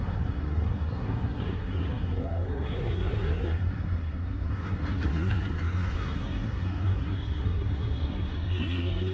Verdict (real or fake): fake